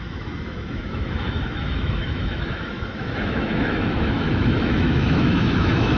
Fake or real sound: fake